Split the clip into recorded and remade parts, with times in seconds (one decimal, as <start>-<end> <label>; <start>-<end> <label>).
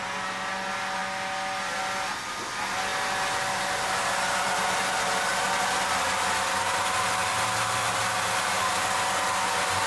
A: 0.0-9.9 recorded